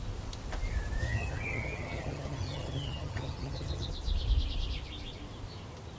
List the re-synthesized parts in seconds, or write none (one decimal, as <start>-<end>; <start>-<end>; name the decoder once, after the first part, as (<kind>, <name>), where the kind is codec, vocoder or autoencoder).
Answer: 1.0-3.9 (vocoder, HiFi-GAN)

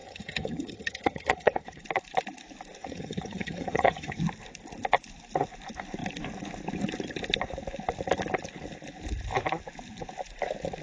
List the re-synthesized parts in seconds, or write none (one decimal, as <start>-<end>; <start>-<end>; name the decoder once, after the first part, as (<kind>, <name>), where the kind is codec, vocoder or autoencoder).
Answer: 0.0-1.8 (vocoder, HiFi-GAN); 2.8-4.2

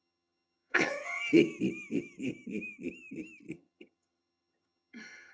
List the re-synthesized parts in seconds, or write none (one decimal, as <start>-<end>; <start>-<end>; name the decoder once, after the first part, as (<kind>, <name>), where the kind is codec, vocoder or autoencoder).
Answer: 0.0-1.2 (vocoder, HiFi-GAN); 3.5-5.3

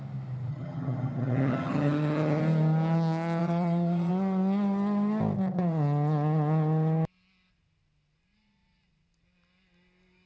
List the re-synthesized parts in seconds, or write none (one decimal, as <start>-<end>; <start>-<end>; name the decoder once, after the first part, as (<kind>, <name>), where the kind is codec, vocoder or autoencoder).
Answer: 0.5-2.4 (vocoder, HiFi-GAN); 3.4-4.1

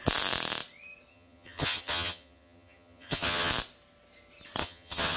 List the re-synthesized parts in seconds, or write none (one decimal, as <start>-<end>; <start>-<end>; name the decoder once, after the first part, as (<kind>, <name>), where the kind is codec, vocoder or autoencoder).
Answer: 1.1-3.5 (vocoder, HiFi-GAN); 4.6-5.2

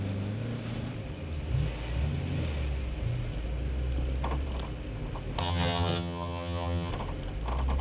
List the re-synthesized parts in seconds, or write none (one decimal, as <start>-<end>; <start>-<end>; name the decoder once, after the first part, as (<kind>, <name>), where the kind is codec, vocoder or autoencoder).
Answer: 5.4-6.9 (vocoder, HiFi-GAN)

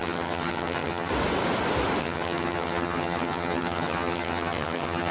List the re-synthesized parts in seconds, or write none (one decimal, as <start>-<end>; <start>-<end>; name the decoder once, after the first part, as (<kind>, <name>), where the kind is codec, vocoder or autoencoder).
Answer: 0.0-1.1 (vocoder, HiFi-GAN); 2.0-5.1

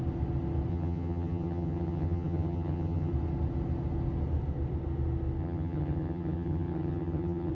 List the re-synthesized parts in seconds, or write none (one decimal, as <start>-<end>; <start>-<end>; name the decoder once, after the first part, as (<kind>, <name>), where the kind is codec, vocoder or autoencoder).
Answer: 0.7-3.1 (vocoder, HiFi-GAN); 5.4-7.5